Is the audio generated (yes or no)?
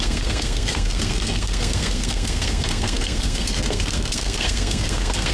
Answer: yes